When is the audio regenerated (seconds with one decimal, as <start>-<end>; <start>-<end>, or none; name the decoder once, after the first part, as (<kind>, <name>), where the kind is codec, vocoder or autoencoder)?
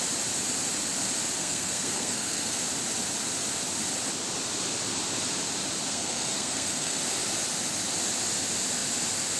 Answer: 1.4-2.6 (codec, SNAC); 5.9-7.0